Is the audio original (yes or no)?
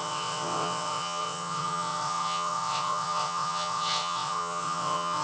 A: no